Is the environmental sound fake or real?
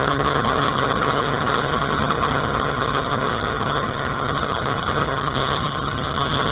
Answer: fake